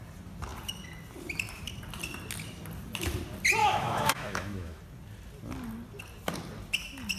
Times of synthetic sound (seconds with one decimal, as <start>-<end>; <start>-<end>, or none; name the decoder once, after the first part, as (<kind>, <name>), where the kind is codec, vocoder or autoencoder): 3.6-4.8 (autoencoder, DAC-VAE)